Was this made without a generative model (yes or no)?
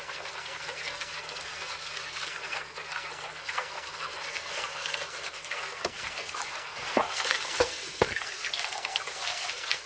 no